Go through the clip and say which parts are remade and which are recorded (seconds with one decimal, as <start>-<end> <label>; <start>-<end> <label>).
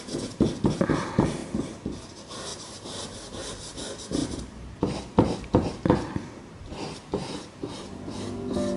0.0-2.5 recorded; 2.5-3.6 remade; 3.6-4.2 recorded; 4.2-8.8 remade